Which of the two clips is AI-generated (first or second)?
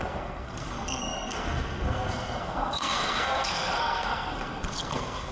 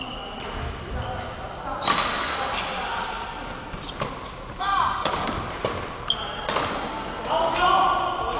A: first